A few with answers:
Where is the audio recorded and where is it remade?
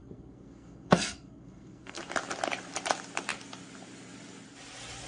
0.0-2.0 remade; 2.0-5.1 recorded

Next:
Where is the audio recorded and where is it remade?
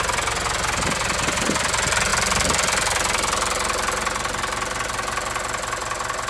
0.0-6.3 recorded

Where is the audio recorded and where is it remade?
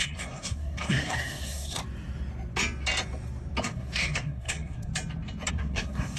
0.0-1.8 remade; 1.8-3.6 recorded; 3.6-4.9 remade; 4.9-5.5 recorded; 5.5-6.2 remade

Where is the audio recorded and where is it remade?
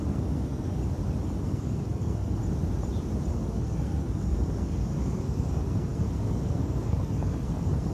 0.0-0.8 remade; 0.8-1.4 recorded; 1.4-2.4 remade; 2.4-3.3 recorded; 3.3-7.9 remade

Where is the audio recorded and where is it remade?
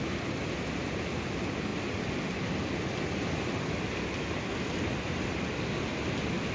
0.0-6.5 recorded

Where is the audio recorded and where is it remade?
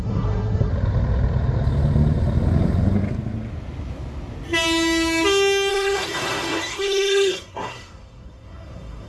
0.0-0.7 remade; 0.7-5.7 recorded; 5.7-9.1 remade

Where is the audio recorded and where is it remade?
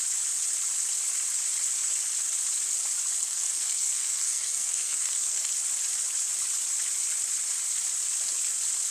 0.0-3.2 recorded; 3.2-5.5 remade; 5.5-8.9 recorded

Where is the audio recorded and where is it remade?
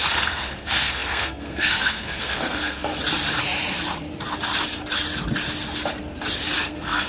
0.0-2.9 remade; 2.9-6.6 recorded; 6.6-7.1 remade